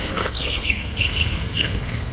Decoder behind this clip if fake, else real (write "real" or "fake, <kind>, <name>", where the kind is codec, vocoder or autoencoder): fake, codec, SNAC